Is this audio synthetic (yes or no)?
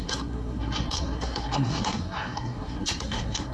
yes